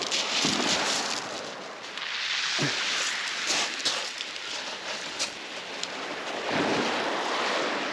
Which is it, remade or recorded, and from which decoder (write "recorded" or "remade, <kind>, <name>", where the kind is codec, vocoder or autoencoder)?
recorded